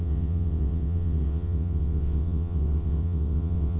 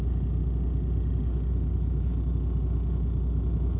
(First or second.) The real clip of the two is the second